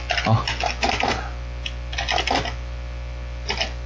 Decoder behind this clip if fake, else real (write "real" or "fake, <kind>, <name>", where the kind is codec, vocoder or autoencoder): real